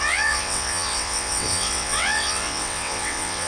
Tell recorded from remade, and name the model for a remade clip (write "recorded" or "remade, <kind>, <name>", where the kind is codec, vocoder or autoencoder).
remade, vocoder, WaveNeXt